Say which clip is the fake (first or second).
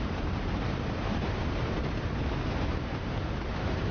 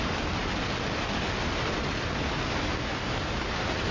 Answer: first